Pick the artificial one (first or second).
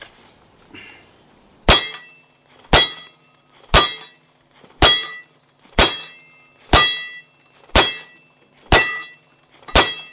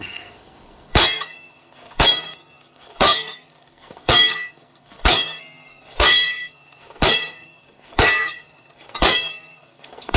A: second